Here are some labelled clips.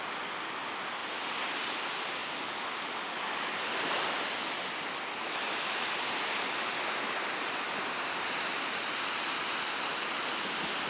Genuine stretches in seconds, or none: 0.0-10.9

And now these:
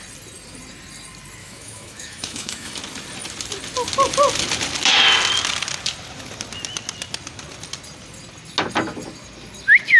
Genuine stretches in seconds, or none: 0.0-1.4; 2.8-10.0

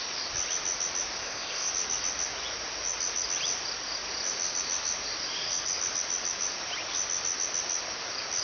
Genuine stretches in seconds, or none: 0.0-1.2; 1.7-8.4